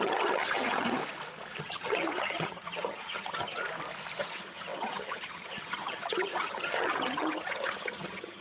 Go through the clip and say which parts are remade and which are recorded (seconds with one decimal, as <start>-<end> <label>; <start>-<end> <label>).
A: 0.0-1.0 remade; 1.0-1.6 recorded; 1.6-3.6 remade; 3.6-4.2 recorded; 4.2-8.4 remade